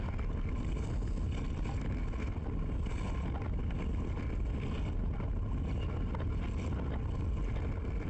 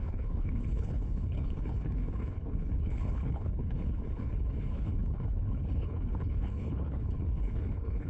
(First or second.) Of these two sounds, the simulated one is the second